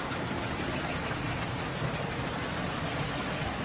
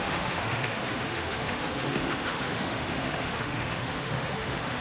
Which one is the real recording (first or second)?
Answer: first